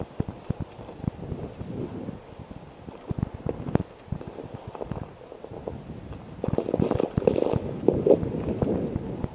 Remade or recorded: recorded